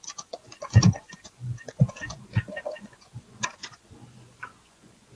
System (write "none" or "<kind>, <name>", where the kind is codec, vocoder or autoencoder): vocoder, Vocos